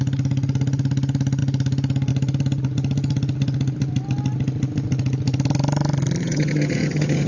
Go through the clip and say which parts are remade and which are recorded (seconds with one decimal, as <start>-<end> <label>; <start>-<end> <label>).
0.0-6.2 recorded; 6.2-7.3 remade